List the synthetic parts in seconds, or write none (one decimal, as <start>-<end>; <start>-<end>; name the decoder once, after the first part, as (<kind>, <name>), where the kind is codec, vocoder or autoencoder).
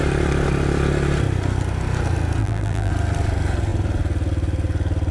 2.4-2.9 (vocoder, BigVGAN v2)